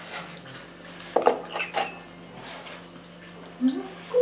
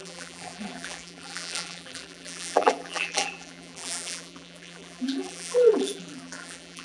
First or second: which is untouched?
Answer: first